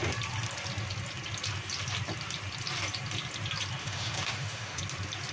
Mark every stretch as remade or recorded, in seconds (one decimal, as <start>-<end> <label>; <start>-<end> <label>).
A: 0.0-3.8 recorded; 3.8-4.8 remade; 4.8-5.3 recorded